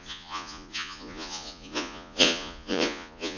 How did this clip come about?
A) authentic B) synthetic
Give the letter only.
B